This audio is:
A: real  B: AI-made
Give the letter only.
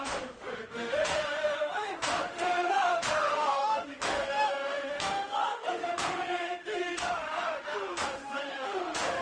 B